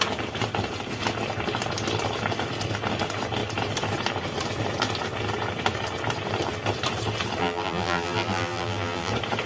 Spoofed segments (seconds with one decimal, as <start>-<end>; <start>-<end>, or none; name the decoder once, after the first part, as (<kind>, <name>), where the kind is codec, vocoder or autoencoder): 7.4-9.1 (vocoder, BigVGAN v2)